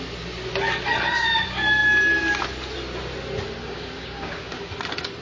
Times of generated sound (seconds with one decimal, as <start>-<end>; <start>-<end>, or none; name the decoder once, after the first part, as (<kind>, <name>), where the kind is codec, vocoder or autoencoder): 3.6-4.7 (codec, DAC)